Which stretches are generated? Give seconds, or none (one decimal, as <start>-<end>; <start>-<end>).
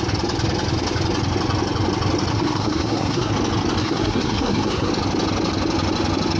2.3-3.3; 3.8-4.9